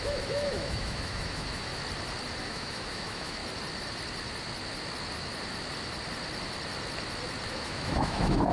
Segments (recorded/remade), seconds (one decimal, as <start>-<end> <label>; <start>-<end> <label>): 0.0-1.7 remade; 1.7-2.4 recorded; 2.4-3.4 remade; 3.4-7.5 recorded; 7.5-8.5 remade